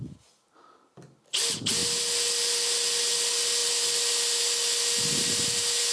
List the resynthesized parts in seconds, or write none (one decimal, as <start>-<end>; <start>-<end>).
none